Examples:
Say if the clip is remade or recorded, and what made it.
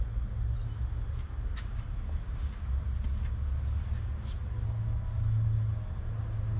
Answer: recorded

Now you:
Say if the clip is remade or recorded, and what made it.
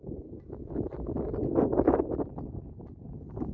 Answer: recorded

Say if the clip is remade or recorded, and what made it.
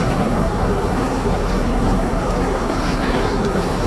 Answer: remade, codec, SNAC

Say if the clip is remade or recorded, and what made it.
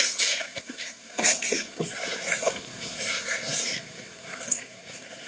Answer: remade, codec, SNAC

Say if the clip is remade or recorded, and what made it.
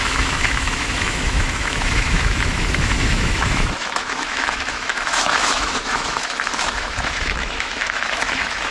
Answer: remade, autoencoder, DAC-VAE